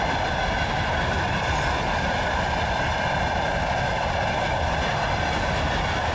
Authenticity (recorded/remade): recorded